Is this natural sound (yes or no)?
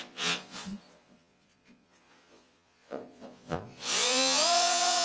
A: no